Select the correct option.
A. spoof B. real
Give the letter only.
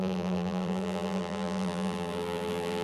A